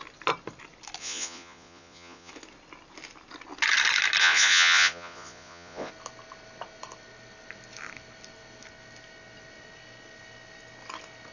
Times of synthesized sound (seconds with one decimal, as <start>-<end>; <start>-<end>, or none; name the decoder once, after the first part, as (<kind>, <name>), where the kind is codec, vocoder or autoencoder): 1.0-2.3 (vocoder, Vocos); 4.2-5.9